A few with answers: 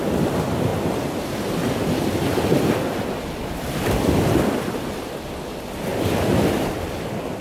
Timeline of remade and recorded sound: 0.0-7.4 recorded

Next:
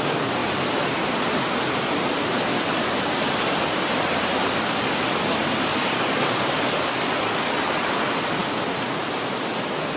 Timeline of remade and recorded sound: 0.0-10.0 recorded

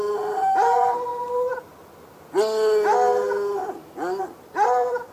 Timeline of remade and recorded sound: 0.0-1.1 remade; 1.1-4.2 recorded; 4.2-5.1 remade

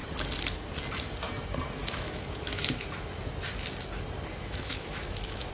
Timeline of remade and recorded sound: 0.0-1.8 recorded; 1.8-2.6 remade; 2.6-4.4 recorded; 4.4-5.5 remade

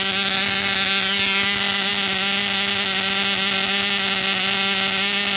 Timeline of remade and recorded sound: 0.0-5.4 recorded

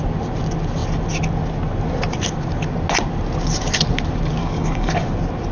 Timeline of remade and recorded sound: 0.0-4.4 recorded; 4.4-4.9 remade; 4.9-5.5 recorded